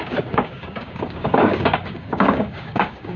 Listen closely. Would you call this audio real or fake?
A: fake